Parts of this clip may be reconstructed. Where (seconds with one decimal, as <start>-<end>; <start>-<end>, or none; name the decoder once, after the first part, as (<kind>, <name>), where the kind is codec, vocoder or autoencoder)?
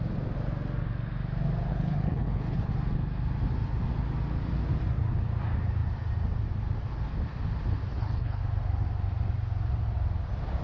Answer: 1.7-2.7 (codec, HILCodec); 7.9-8.4